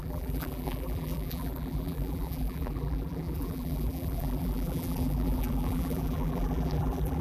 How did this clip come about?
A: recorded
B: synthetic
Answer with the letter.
B